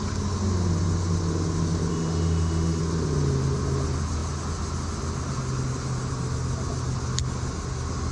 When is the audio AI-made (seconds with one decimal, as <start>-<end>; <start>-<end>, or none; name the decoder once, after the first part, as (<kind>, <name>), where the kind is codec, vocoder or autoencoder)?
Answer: 1.9-2.8 (autoencoder, DAC-VAE)